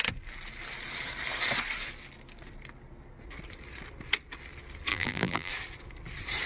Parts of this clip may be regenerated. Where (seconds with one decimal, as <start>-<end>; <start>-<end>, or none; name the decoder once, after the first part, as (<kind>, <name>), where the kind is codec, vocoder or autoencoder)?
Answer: 4.9-5.5 (vocoder, BigVGAN v2)